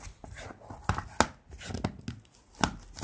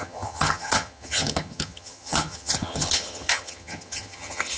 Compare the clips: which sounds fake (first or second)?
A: second